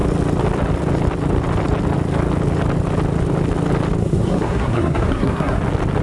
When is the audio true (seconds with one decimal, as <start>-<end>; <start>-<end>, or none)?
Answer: 0.0-4.0; 5.6-6.0